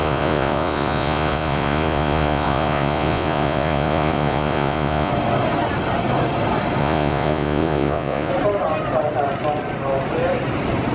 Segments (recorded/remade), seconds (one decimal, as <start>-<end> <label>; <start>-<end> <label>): 0.0-5.1 remade; 5.1-6.8 recorded; 6.8-8.3 remade; 8.3-10.9 recorded